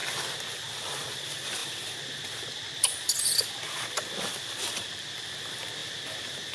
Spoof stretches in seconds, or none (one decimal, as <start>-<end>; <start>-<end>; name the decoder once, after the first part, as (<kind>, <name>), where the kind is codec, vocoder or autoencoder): 0.6-6.5 (vocoder, BigVGAN v2)

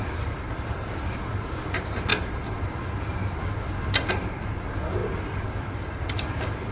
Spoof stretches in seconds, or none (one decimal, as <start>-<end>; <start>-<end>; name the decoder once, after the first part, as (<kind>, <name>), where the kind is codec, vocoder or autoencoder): 0.0-2.1 (vocoder, BigVGAN v2); 4.1-6.7